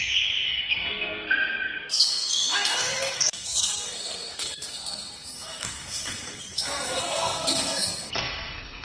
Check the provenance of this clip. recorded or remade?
remade